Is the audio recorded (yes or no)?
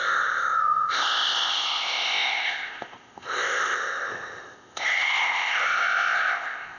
no